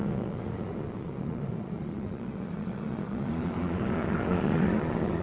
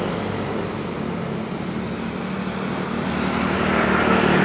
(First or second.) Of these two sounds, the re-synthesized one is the first